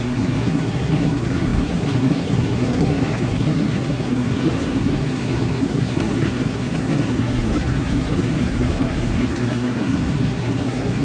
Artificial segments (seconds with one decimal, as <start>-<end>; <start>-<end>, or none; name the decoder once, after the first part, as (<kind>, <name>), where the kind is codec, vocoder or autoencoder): 0.0-11.0 (codec, SNAC)